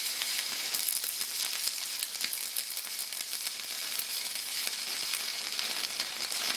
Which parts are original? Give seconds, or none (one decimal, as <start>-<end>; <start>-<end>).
0.7-3.9; 4.6-6.6